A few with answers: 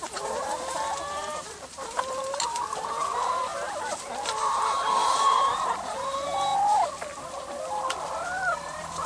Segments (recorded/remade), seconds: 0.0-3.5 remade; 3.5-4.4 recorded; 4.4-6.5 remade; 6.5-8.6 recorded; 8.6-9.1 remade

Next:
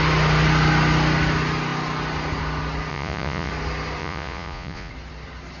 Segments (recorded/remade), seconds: 0.0-2.9 recorded; 2.9-3.5 remade; 3.5-4.0 recorded; 4.0-4.9 remade; 4.9-5.6 recorded

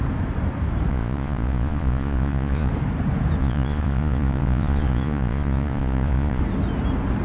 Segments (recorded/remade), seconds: 0.0-0.9 recorded; 0.9-2.7 remade; 2.7-3.4 recorded; 3.4-6.4 remade; 6.4-7.2 recorded

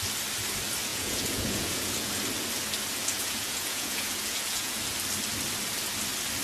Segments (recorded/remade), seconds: 0.0-0.9 recorded; 0.9-2.1 remade; 2.1-3.0 recorded; 3.0-4.8 remade; 4.8-6.4 recorded

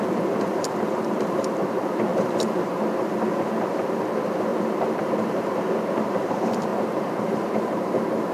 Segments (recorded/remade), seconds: 0.0-6.7 remade; 6.7-7.3 recorded; 7.3-8.3 remade

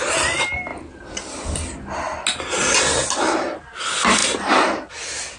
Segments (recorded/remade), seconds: 0.0-5.4 recorded

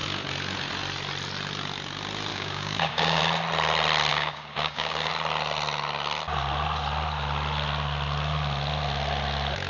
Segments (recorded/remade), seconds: 0.0-2.3 recorded; 2.3-3.2 remade; 3.2-4.1 recorded; 4.1-5.1 remade; 5.1-9.7 recorded